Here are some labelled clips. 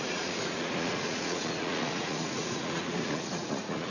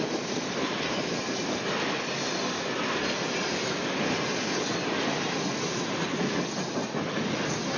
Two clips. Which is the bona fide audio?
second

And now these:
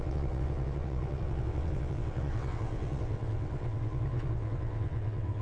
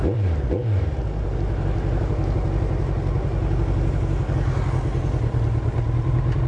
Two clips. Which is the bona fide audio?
second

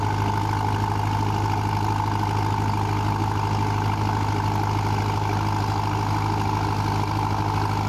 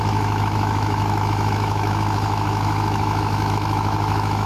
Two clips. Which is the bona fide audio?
first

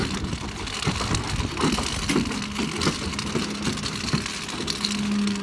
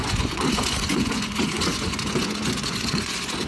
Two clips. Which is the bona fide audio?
first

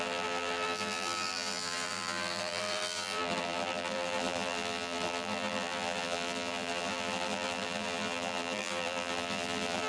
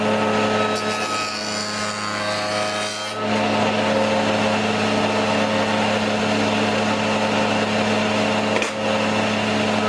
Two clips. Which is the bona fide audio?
second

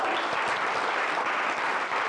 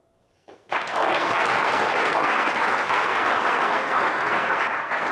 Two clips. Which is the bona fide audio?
first